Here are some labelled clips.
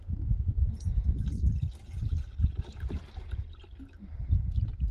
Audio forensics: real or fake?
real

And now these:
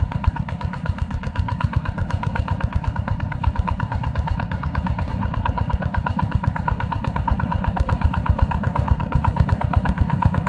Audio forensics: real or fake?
fake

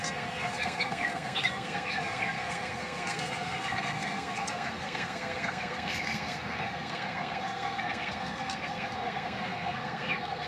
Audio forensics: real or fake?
fake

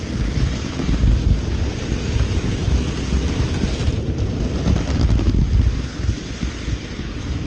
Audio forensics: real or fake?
real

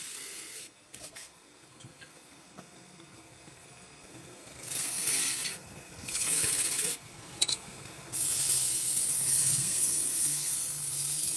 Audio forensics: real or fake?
fake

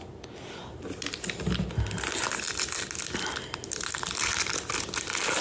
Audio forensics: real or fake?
real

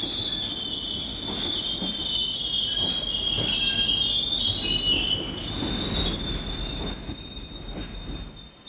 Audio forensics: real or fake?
real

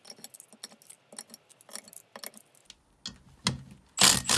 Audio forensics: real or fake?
real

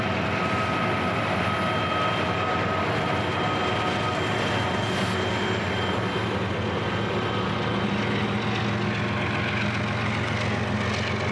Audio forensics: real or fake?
real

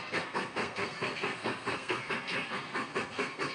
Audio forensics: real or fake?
fake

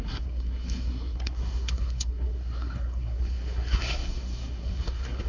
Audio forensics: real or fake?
fake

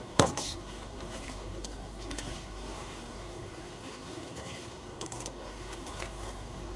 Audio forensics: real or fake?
fake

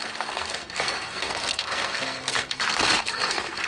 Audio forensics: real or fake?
fake